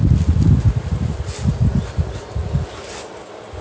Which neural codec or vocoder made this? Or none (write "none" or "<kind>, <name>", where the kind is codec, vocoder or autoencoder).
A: none